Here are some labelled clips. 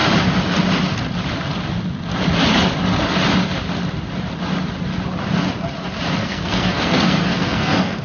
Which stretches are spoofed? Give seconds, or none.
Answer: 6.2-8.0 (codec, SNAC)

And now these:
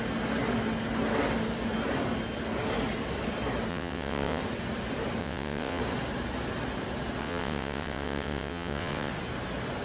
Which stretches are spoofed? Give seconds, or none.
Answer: 3.7-4.4 (vocoder, WaveNeXt); 5.2-5.8; 7.2-9.1

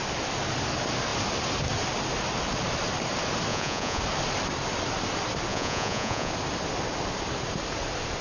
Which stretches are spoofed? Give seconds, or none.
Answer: 3.5-4.0 (vocoder, Vocos); 5.5-6.3

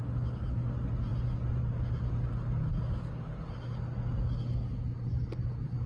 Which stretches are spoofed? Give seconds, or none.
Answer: none

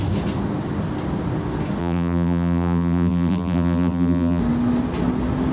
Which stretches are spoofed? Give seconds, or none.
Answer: 1.8-4.4 (vocoder, BigVGAN v2)

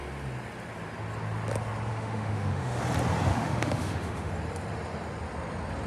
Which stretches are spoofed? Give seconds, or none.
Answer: 1.9-2.8 (autoencoder, DAC-VAE); 3.3-4.3